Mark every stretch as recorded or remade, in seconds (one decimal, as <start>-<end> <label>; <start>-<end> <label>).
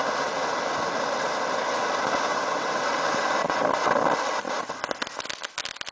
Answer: 0.0-2.3 recorded; 2.3-2.8 remade; 2.8-5.9 recorded